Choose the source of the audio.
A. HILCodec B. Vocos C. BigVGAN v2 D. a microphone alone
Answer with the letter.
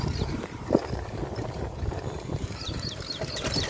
C